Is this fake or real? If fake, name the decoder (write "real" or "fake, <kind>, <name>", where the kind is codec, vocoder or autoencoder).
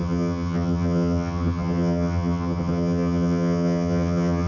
fake, vocoder, HiFi-GAN